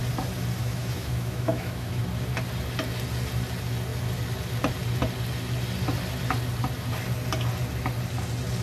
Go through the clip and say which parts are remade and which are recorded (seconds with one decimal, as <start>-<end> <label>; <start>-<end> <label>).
0.0-0.6 recorded; 0.6-2.0 remade; 2.0-8.6 recorded